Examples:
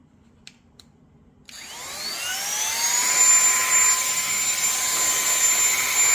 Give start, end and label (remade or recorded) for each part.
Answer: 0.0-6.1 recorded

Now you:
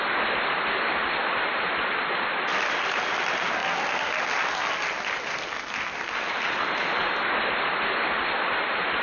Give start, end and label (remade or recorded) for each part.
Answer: 0.0-9.0 recorded

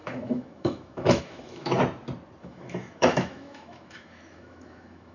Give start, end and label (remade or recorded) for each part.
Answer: 0.0-1.8 remade; 1.8-2.4 recorded; 2.4-5.1 remade

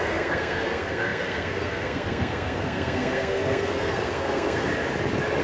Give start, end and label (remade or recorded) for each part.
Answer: 0.0-4.7 remade; 4.7-5.4 recorded

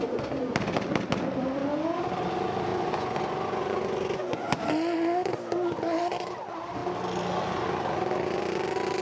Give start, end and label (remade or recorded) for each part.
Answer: 0.0-2.7 recorded; 2.7-4.5 remade; 4.5-9.0 recorded